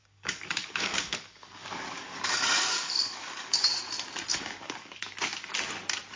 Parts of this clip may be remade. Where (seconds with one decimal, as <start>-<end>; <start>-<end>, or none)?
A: 0.0-3.7; 4.3-5.0

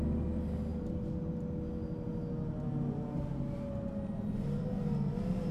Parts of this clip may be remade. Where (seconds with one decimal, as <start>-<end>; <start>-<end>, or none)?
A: none